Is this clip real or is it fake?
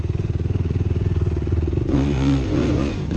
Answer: fake